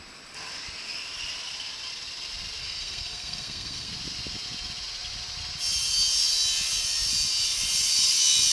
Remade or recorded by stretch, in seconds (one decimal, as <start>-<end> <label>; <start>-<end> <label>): 0.0-2.6 recorded; 2.6-3.9 remade; 3.9-8.5 recorded